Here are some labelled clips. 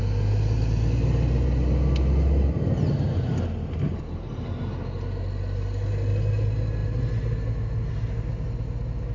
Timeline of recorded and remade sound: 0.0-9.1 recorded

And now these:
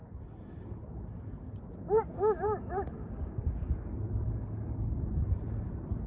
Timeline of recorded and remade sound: 0.0-3.0 recorded; 3.0-5.0 remade; 5.0-6.1 recorded

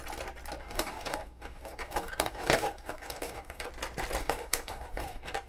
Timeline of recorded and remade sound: 0.0-0.6 recorded; 0.6-3.7 remade; 3.7-4.2 recorded; 4.2-5.5 remade